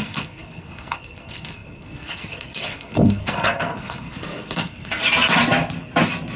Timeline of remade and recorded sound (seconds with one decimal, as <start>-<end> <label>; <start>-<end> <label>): 0.0-5.0 remade; 5.0-6.4 recorded